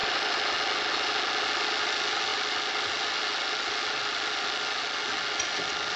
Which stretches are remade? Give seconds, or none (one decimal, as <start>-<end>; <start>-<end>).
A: none